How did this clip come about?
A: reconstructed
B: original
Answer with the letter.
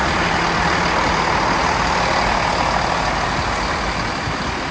B